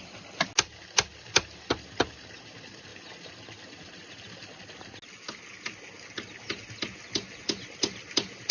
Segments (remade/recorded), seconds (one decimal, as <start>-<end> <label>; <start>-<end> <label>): 0.0-8.5 recorded